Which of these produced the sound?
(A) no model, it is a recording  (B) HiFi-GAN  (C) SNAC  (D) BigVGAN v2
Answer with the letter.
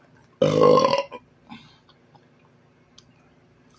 A